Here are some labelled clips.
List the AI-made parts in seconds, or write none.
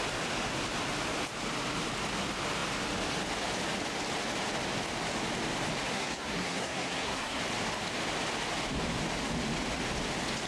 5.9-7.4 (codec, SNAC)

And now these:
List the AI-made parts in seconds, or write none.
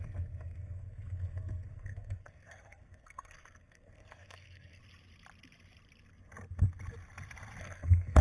0.0-4.8 (codec, SNAC); 7.6-8.2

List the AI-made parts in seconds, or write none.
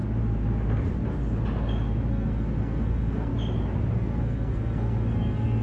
2.1-3.3 (codec, SNAC); 3.9-5.6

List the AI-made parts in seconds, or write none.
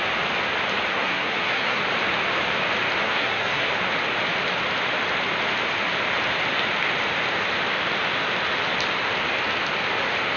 0.9-1.8 (codec, SNAC); 3.0-3.7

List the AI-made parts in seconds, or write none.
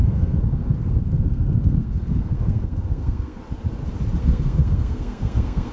0.0-3.4 (codec, SNAC); 4.2-5.7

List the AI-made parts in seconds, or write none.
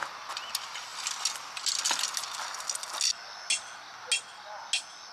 none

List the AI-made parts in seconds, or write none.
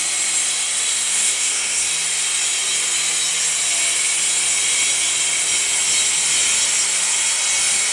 0.9-1.9 (codec, SNAC)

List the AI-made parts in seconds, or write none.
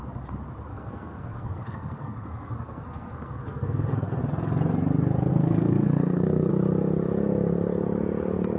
0.7-4.2 (codec, SNAC); 5.3-6.5